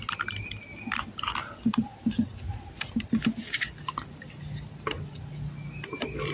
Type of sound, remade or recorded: recorded